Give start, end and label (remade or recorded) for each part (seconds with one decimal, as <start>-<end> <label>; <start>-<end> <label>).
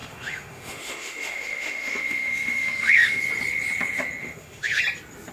0.0-3.2 remade; 3.2-4.2 recorded; 4.2-4.8 remade; 4.8-5.3 recorded